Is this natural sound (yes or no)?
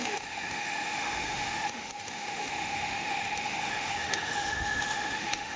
no